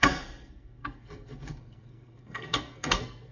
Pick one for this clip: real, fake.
fake